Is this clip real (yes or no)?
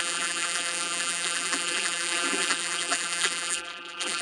no